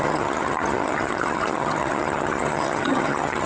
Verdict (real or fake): fake